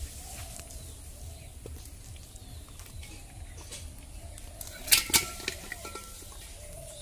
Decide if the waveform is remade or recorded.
recorded